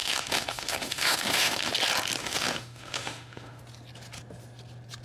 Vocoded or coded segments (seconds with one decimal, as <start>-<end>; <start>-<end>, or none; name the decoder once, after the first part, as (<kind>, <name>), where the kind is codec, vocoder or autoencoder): 0.0-1.7 (autoencoder, DAC-VAE); 2.2-3.6